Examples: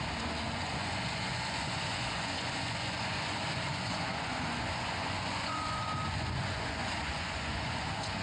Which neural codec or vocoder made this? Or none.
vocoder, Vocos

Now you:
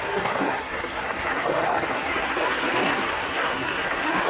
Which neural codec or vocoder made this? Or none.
codec, SNAC